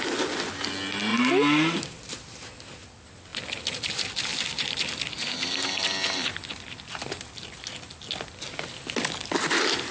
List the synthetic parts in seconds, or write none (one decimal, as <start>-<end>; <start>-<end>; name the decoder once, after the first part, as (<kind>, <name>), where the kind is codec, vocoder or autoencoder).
none